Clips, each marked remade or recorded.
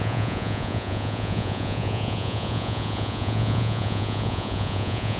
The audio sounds remade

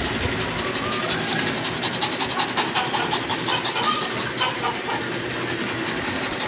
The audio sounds recorded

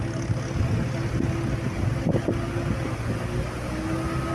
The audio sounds recorded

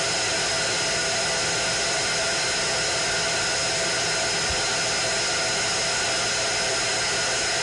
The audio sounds recorded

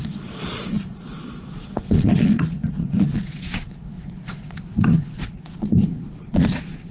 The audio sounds remade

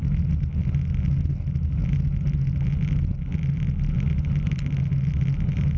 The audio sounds recorded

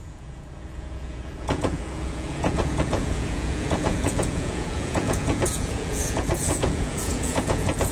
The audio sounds remade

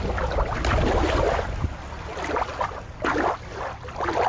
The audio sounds recorded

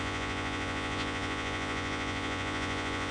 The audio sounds remade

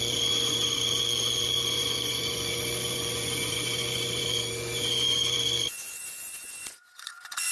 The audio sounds remade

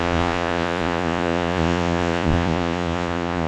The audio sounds remade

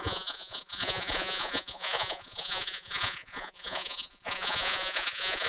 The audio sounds remade